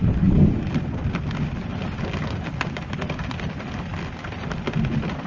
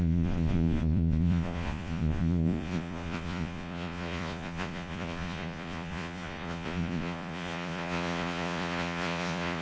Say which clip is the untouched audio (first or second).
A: first